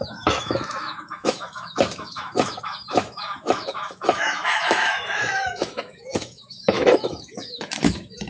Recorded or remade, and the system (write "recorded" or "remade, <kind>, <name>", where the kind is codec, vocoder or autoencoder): remade, autoencoder, DAC-VAE